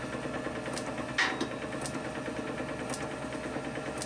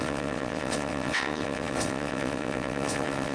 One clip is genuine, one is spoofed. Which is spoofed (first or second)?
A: second